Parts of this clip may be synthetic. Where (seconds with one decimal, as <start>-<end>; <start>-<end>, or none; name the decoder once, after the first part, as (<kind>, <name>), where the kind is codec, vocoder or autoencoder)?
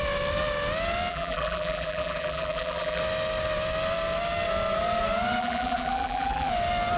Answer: 1.1-3.0 (vocoder, BigVGAN v2); 5.4-6.5